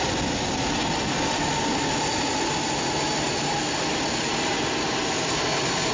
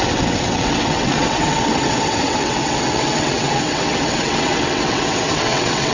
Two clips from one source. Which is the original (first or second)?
first